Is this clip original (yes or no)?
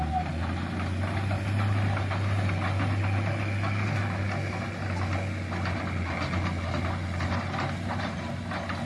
yes